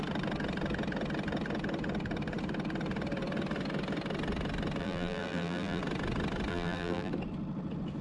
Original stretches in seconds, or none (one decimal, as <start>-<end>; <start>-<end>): 0.0-4.8; 5.8-6.5; 7.1-8.0